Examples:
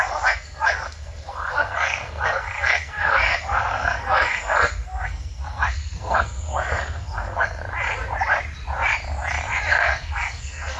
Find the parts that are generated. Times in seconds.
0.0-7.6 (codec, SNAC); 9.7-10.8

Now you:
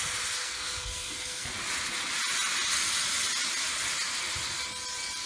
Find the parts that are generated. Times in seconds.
0.4-1.5 (codec, SNAC)